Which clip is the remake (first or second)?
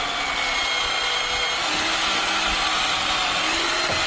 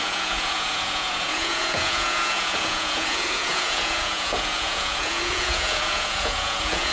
second